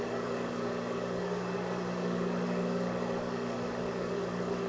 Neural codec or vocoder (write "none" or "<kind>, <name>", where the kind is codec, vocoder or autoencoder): codec, DAC